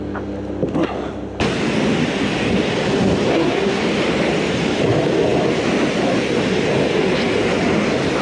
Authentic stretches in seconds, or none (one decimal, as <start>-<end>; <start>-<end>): 0.0-3.3; 3.8-8.2